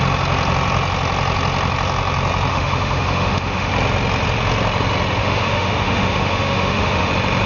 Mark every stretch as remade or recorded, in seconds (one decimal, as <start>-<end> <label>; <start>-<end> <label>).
0.0-2.5 recorded; 2.5-3.7 remade; 3.7-5.2 recorded; 5.2-7.1 remade; 7.1-7.5 recorded